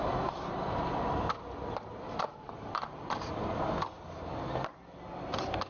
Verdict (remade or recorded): recorded